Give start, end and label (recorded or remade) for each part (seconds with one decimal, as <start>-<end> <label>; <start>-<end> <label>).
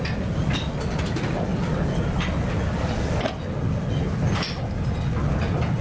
0.0-5.8 recorded